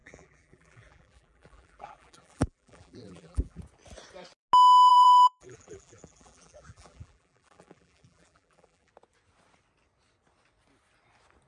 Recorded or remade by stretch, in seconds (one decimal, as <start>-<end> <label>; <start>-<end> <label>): 0.0-3.6 remade; 3.6-4.9 recorded; 4.9-8.9 remade; 8.9-11.5 recorded